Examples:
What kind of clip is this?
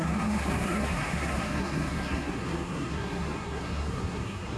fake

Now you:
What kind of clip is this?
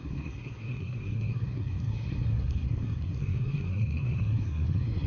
fake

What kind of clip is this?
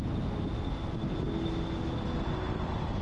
real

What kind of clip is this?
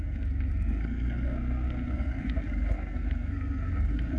fake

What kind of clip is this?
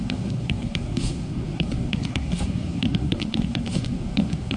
fake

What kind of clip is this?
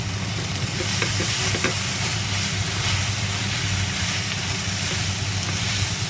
real